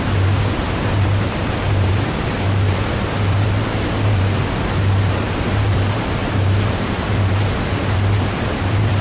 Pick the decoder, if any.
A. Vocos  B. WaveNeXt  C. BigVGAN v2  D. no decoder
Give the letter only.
C